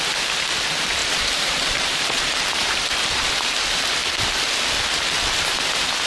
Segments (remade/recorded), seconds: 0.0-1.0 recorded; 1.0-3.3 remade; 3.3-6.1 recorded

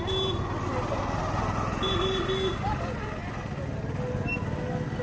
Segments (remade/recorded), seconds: 0.0-5.0 recorded